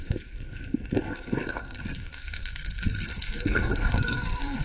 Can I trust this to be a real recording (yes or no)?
no